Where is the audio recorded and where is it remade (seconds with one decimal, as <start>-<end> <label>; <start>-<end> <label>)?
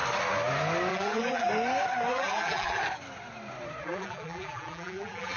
0.0-0.9 recorded; 0.9-1.5 remade; 1.5-2.1 recorded; 2.1-2.8 remade; 2.8-3.8 recorded; 3.8-5.4 remade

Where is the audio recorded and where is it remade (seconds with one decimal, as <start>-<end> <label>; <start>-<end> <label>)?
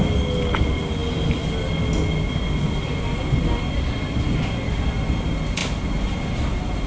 0.0-6.9 recorded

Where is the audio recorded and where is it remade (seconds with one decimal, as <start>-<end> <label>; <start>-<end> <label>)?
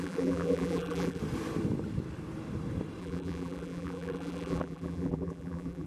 0.0-1.2 remade; 1.2-3.0 recorded; 3.0-5.9 remade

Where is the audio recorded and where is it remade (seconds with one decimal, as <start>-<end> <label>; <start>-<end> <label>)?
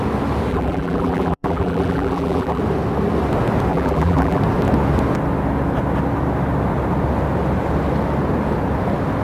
0.0-0.5 recorded; 0.5-2.6 remade; 2.6-3.7 recorded; 3.7-4.4 remade; 4.4-9.2 recorded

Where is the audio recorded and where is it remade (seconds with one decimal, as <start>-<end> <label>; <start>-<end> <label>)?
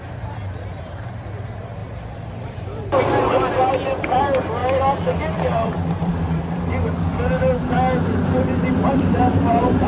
0.0-4.6 remade; 4.6-5.3 recorded; 5.3-6.1 remade; 6.1-8.8 recorded; 8.8-9.9 remade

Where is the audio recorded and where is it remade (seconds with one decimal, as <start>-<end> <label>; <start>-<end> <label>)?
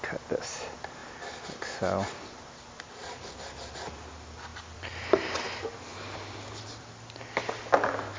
0.0-4.5 recorded; 4.5-5.4 remade; 5.4-5.9 recorded; 5.9-6.9 remade; 6.9-8.2 recorded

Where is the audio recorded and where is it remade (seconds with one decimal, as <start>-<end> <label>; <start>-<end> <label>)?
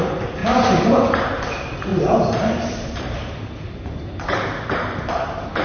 0.0-1.9 recorded; 1.9-5.6 remade